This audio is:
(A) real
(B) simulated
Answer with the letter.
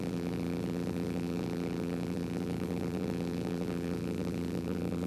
B